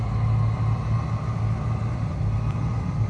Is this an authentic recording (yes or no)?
yes